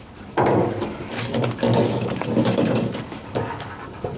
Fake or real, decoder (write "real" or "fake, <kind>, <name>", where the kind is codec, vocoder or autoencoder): fake, codec, DAC